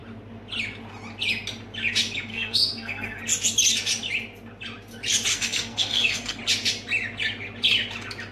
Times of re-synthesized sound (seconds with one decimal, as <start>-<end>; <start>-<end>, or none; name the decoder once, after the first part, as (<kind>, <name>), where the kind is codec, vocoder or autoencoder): 2.3-3.2 (codec, SNAC); 5.3-6.4